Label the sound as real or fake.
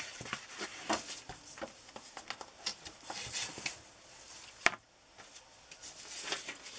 real